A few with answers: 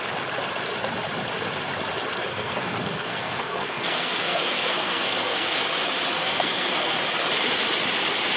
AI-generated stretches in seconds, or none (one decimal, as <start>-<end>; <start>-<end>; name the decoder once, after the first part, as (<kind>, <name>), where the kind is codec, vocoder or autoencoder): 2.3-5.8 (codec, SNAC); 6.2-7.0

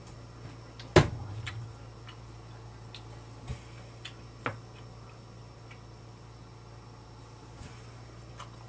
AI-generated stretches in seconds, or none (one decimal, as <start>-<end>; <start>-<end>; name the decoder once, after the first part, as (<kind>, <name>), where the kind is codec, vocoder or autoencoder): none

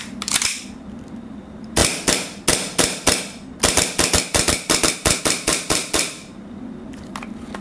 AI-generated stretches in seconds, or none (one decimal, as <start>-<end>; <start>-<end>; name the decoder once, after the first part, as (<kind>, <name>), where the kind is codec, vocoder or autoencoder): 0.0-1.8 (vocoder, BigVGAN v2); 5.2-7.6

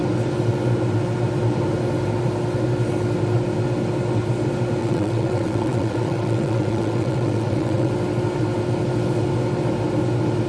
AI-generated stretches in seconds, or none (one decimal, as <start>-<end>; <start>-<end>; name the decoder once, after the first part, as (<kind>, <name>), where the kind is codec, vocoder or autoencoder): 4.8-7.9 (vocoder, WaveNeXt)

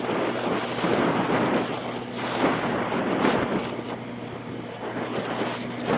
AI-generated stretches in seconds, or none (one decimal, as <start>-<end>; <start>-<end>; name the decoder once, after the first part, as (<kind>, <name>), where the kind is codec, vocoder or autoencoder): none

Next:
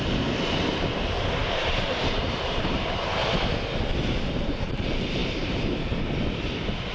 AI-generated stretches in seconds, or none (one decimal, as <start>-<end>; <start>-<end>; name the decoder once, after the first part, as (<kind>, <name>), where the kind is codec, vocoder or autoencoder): 0.0-3.2 (vocoder, BigVGAN v2); 4.1-6.9

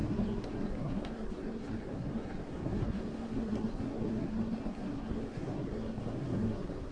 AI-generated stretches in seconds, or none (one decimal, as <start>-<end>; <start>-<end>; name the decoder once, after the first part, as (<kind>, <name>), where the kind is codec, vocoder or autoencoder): 0.0-6.9 (codec, SNAC)